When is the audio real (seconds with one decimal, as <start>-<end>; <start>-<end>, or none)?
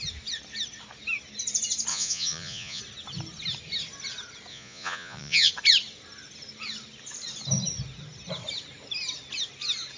0.0-1.9; 2.8-4.5; 5.5-10.0